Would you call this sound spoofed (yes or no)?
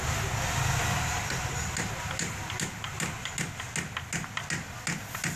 no